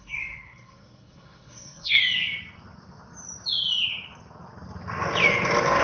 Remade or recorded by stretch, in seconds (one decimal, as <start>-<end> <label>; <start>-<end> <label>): 0.0-2.0 remade; 2.0-5.8 recorded